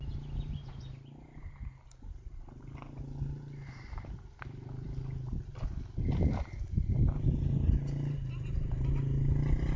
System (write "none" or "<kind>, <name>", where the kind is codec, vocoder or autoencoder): none